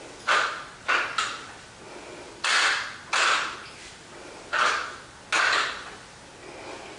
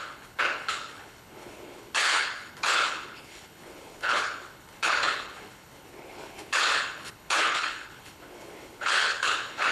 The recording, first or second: first